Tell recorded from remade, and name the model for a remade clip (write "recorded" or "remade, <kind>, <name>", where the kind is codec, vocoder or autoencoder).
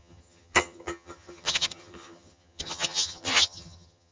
remade, vocoder, HiFi-GAN